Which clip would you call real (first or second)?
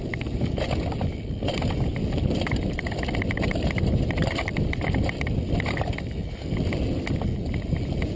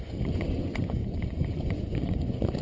first